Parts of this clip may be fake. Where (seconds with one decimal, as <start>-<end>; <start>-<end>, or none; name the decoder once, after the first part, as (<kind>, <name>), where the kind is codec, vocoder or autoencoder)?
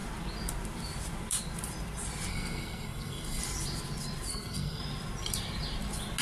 2.3-3.4 (codec, SNAC); 4.3-4.8